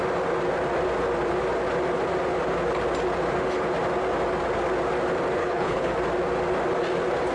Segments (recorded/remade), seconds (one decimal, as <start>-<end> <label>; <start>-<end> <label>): 0.0-5.4 recorded; 5.4-5.9 remade; 5.9-7.3 recorded